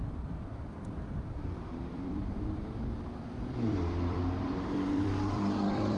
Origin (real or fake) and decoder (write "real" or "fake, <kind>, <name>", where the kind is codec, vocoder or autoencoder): fake, vocoder, BigVGAN v2